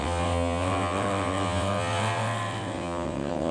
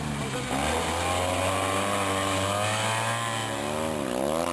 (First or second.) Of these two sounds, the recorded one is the second